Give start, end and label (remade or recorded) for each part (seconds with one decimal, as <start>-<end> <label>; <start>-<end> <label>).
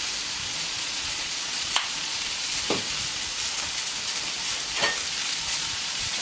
0.0-0.4 recorded; 0.4-2.6 remade; 2.6-5.2 recorded; 5.2-6.2 remade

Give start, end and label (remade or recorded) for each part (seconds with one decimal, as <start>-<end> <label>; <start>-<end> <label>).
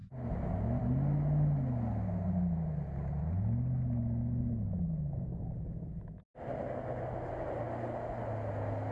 0.0-8.9 recorded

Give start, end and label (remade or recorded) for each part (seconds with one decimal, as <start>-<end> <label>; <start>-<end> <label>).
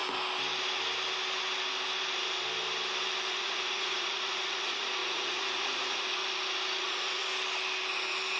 0.0-3.3 recorded; 3.3-6.2 remade; 6.2-6.8 recorded; 6.8-7.2 remade; 7.2-8.4 recorded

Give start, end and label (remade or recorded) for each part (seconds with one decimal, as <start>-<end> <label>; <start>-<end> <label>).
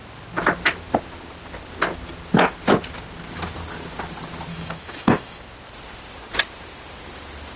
0.0-4.5 recorded; 4.5-5.4 remade; 5.4-7.6 recorded